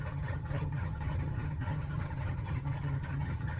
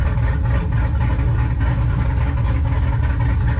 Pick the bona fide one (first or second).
second